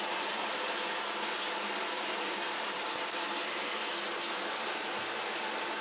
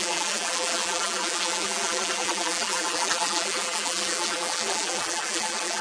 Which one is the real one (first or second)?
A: first